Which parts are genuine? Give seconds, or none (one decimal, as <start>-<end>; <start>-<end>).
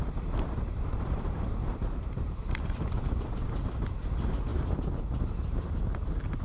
3.8-6.4